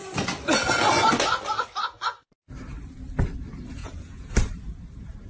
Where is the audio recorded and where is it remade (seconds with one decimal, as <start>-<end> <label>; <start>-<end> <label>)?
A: 0.0-3.8 recorded; 3.8-4.3 remade; 4.3-5.3 recorded